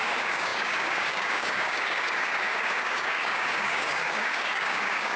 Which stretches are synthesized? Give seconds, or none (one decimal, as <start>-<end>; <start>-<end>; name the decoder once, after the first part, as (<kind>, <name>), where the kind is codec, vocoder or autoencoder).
0.0-5.2 (codec, DAC)